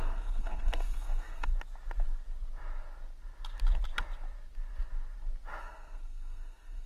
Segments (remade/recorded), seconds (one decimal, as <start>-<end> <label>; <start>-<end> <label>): 0.0-1.5 remade; 1.5-5.6 recorded; 5.6-6.9 remade